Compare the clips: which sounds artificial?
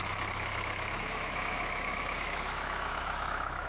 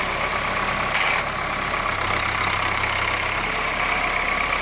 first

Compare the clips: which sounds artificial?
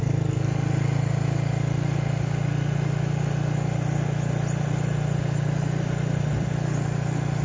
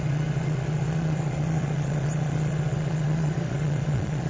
second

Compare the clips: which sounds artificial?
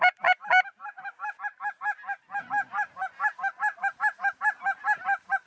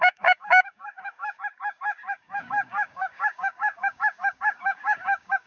second